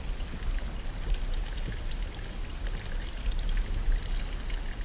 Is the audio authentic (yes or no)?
yes